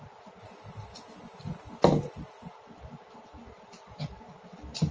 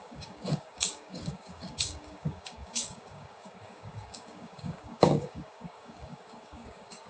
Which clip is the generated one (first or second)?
second